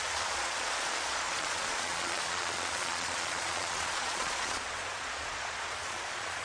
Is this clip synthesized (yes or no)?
yes